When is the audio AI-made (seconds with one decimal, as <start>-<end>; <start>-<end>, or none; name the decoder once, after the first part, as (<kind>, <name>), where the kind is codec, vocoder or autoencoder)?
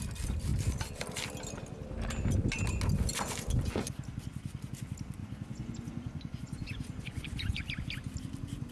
5.2-7.6 (vocoder, Vocos)